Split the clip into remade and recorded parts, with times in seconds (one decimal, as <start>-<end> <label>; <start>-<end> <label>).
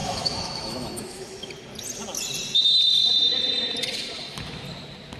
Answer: 0.0-1.5 remade; 1.5-5.2 recorded